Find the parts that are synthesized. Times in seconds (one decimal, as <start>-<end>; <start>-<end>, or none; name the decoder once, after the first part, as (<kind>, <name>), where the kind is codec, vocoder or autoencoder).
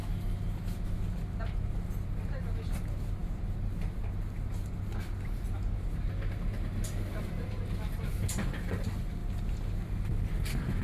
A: 9.2-9.7 (vocoder, BigVGAN v2)